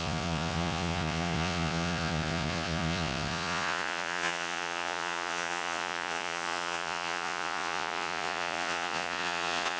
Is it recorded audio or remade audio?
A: remade